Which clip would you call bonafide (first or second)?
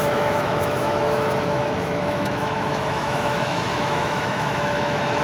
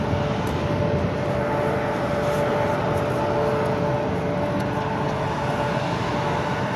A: second